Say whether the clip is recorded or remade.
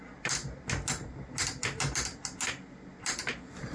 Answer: recorded